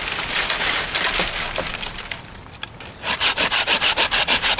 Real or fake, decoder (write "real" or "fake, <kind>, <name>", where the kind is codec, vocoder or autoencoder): fake, vocoder, BigVGAN v2